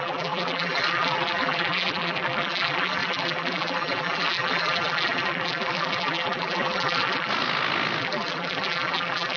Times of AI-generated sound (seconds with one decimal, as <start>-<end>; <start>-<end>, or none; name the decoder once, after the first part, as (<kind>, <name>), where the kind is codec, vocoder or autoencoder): 0.0-7.3 (vocoder, BigVGAN v2); 8.0-9.4